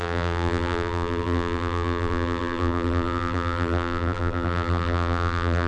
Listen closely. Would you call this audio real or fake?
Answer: fake